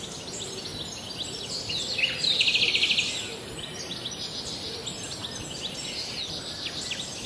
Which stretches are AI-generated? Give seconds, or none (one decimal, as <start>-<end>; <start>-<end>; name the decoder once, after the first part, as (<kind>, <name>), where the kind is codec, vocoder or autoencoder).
none